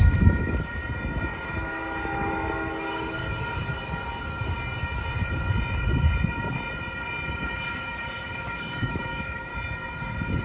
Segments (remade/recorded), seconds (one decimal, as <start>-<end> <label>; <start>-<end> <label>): 0.0-0.8 remade; 0.8-1.4 recorded; 1.4-3.2 remade; 3.2-7.3 recorded; 7.3-9.5 remade; 9.5-10.4 recorded